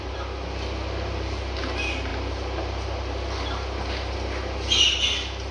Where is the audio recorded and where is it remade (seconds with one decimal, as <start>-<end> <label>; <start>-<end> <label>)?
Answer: 0.0-5.5 recorded